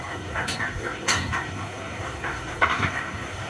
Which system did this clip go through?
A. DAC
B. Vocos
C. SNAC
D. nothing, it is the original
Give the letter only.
C